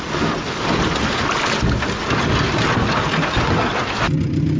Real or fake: real